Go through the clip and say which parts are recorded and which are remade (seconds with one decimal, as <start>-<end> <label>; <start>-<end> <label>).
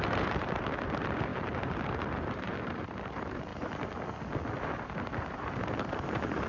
0.0-3.5 remade; 3.5-4.6 recorded; 4.6-6.5 remade